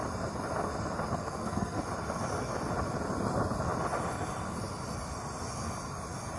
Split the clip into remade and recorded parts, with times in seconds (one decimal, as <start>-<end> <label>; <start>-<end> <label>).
0.0-1.2 recorded; 1.2-1.8 remade; 1.8-6.4 recorded

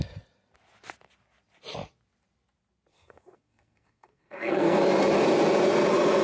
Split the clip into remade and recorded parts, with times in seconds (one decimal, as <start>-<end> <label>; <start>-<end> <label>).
0.0-2.9 recorded; 2.9-4.8 remade; 4.8-6.2 recorded

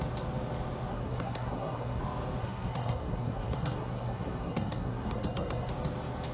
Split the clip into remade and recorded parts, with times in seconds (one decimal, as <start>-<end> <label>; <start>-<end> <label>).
0.0-0.9 recorded; 0.9-2.0 remade; 2.0-2.4 recorded; 2.4-5.7 remade; 5.7-6.3 recorded